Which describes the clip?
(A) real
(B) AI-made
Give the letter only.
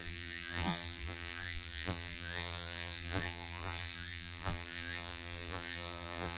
B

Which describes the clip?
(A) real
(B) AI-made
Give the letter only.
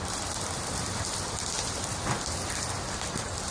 B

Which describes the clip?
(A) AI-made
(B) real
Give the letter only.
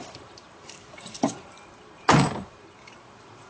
A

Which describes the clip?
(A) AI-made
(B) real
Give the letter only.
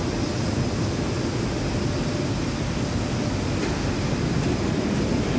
B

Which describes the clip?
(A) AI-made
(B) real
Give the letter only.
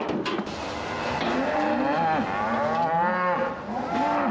B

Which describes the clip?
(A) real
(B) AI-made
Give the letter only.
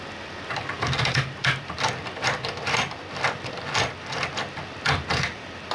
B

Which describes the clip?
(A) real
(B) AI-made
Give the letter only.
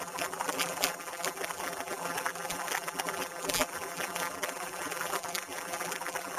B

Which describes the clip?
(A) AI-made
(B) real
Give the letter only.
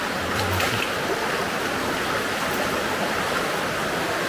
A